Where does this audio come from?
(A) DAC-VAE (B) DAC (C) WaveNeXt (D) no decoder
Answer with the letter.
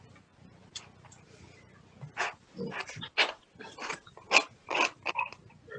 D